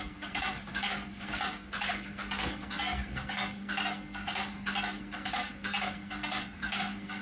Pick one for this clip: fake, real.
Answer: fake